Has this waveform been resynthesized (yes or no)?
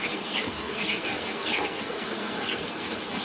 yes